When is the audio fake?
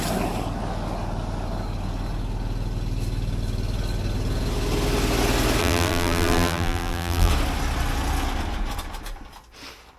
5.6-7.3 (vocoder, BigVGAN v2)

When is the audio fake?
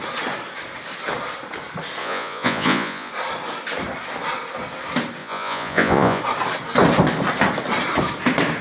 2.0-3.1 (vocoder, Vocos); 5.2-6.2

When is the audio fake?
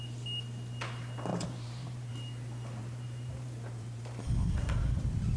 1.3-2.1 (vocoder, BigVGAN v2); 2.8-4.2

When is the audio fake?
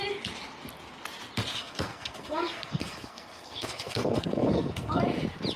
1.6-5.0 (codec, SNAC)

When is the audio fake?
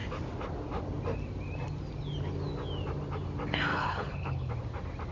3.7-4.5 (codec, HILCodec)